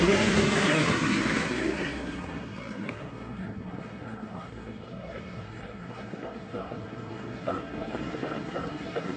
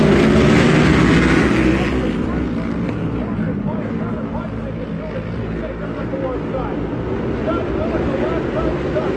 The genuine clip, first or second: second